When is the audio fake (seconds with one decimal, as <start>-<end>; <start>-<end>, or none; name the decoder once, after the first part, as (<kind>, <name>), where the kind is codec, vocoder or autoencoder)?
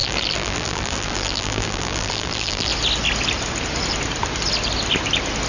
0.0-2.7 (vocoder, BigVGAN v2)